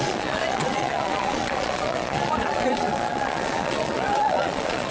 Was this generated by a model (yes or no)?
yes